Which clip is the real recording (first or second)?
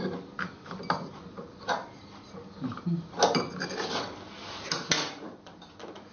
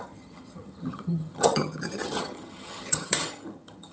first